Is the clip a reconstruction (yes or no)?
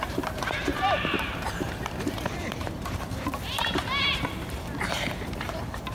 yes